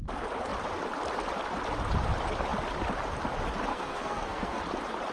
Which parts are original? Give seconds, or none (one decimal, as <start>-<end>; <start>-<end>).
0.0-3.7; 4.6-5.1